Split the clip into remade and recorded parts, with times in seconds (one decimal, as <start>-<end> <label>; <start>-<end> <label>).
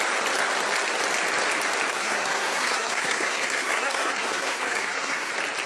0.0-1.9 recorded; 1.9-5.3 remade; 5.3-5.7 recorded